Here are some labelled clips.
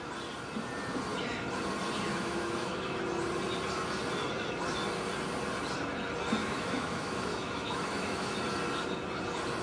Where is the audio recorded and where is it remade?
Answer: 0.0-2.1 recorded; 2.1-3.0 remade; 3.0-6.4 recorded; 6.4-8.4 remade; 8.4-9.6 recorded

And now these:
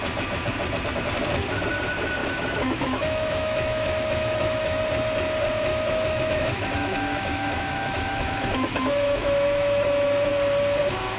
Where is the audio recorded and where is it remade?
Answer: 0.0-2.2 recorded; 2.2-4.8 remade; 4.8-5.7 recorded; 5.7-10.3 remade; 10.3-11.2 recorded

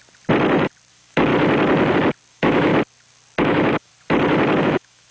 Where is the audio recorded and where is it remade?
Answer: 0.0-0.9 recorded; 0.9-1.3 remade; 1.3-2.3 recorded; 2.3-2.7 remade; 2.7-3.4 recorded; 3.4-3.9 remade; 3.9-4.6 recorded; 4.6-5.1 remade

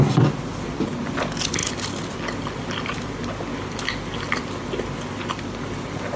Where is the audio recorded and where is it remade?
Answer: 0.0-6.2 recorded